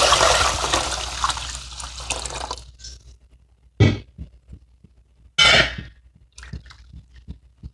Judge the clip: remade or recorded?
recorded